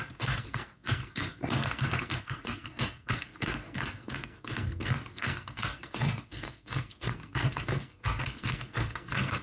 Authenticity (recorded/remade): remade